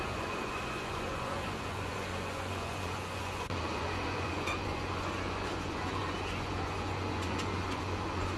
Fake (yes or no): yes